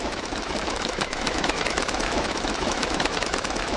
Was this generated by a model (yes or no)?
yes